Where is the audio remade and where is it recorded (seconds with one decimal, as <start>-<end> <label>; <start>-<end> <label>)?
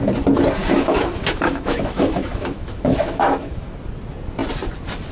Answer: 0.0-0.6 recorded; 0.6-3.7 remade; 3.7-5.1 recorded